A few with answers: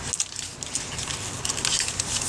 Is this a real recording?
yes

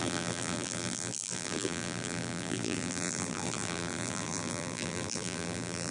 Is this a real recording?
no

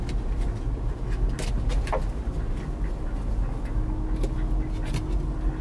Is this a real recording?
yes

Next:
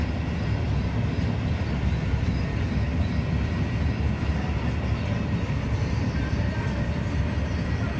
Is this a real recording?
yes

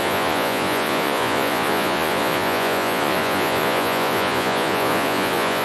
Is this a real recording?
no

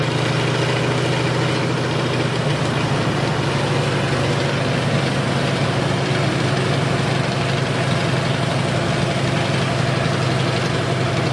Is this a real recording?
yes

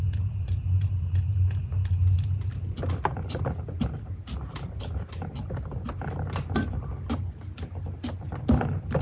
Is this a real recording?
yes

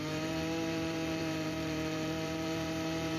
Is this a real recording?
no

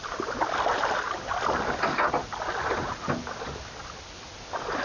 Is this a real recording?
yes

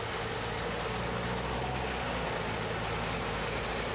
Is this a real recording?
yes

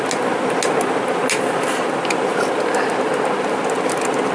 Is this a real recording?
yes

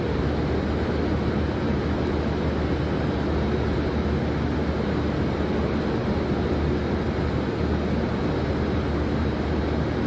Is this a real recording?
yes